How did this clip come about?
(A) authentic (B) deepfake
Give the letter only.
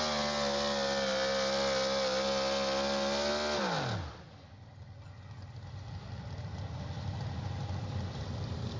A